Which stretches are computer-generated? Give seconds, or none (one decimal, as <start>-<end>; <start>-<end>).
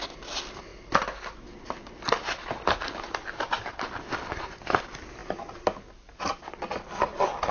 none